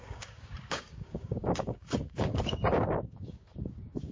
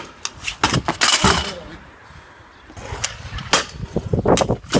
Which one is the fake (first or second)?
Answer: first